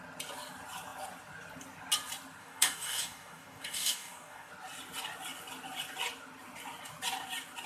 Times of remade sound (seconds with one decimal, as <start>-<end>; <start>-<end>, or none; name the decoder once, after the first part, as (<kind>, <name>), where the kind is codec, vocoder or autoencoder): 2.4-4.5 (codec, DAC)